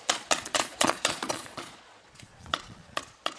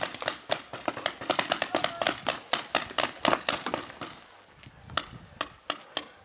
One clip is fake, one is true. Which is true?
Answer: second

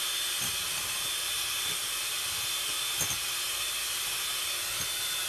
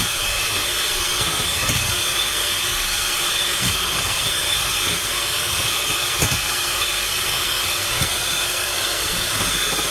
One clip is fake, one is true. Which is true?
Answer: first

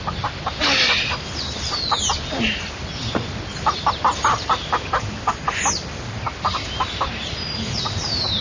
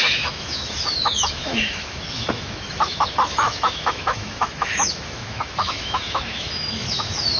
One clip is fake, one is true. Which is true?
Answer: first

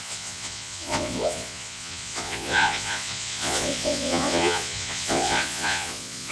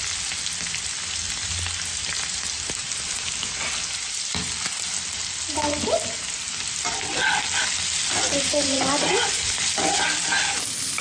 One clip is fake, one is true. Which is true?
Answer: second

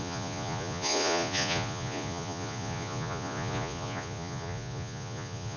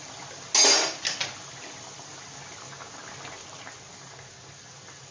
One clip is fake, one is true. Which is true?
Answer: second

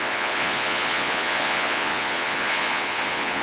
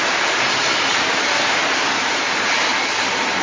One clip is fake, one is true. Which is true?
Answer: second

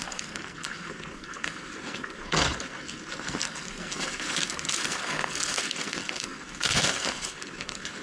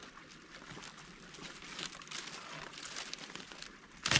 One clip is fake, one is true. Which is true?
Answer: second